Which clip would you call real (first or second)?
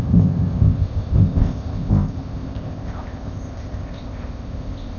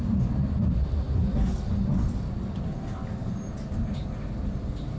second